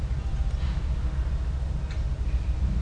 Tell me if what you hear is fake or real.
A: real